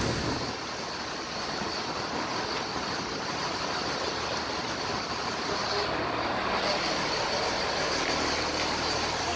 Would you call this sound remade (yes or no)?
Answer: no